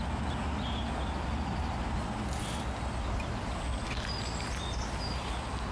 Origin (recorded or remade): recorded